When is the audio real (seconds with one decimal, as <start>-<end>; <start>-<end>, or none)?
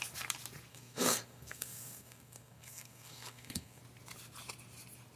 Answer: 0.0-0.7; 3.8-5.2